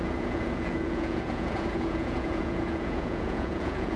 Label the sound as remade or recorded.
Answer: remade